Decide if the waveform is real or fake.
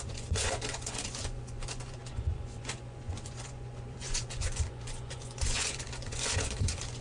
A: fake